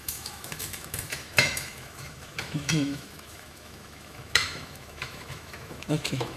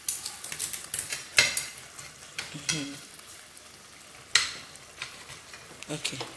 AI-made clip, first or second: first